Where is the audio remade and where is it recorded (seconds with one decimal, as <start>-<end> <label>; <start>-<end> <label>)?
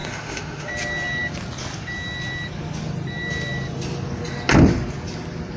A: 0.0-0.7 remade; 0.7-5.6 recorded